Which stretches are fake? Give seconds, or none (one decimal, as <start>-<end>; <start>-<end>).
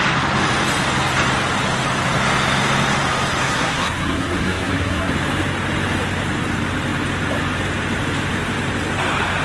3.4-5.1